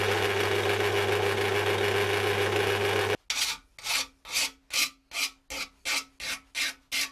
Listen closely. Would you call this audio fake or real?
real